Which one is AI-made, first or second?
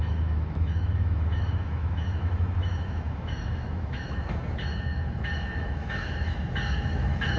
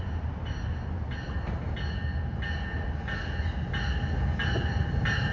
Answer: first